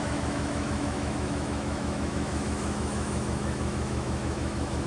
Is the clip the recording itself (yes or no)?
no